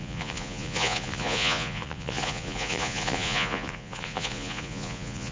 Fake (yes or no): yes